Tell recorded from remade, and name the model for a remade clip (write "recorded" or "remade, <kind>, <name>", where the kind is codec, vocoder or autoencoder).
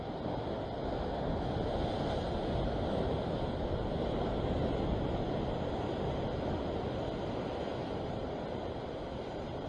recorded